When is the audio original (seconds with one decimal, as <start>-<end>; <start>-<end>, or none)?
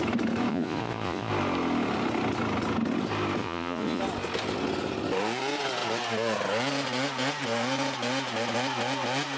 0.0-0.5; 1.3-3.4; 4.0-9.4